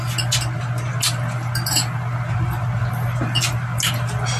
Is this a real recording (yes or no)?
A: yes